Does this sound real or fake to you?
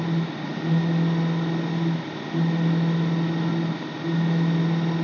real